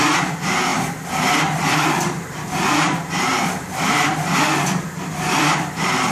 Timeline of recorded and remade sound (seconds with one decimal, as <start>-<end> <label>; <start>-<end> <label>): 0.0-0.7 recorded; 0.7-2.5 remade; 2.5-3.3 recorded; 3.3-4.6 remade; 4.6-6.1 recorded